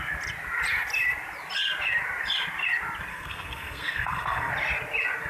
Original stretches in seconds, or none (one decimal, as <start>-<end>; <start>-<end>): 0.0-3.1; 4.5-5.3

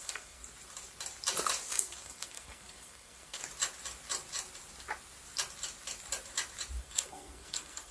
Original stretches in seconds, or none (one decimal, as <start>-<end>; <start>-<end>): 0.4-1.7; 3.4-6.8

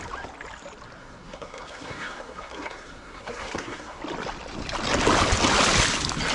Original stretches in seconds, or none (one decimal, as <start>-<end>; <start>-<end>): 0.0-1.0; 4.0-6.3

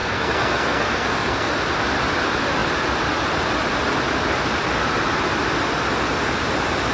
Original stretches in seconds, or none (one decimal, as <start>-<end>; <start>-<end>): 1.5-6.9

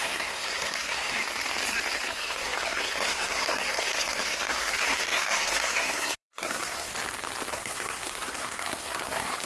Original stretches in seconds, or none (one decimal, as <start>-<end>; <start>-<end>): 1.2-2.1; 6.9-7.5

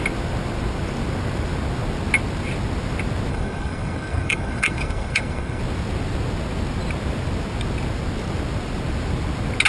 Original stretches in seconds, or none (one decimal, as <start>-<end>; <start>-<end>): 0.0-3.3; 5.6-9.7

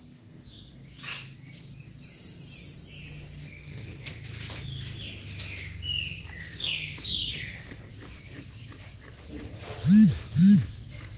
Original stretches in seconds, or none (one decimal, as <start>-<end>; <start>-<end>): 0.8-3.5; 4.1-6.4; 7.9-10.1

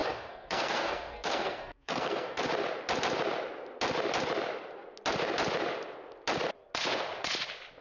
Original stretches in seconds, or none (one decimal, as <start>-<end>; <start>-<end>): 2.4-7.8